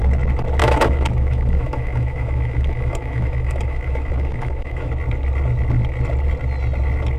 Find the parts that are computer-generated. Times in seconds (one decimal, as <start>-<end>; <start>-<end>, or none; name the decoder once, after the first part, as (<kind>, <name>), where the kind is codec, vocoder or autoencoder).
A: 0.6-4.9 (autoencoder, DAC-VAE)